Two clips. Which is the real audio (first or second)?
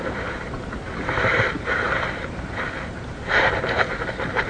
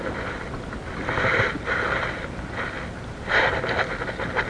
second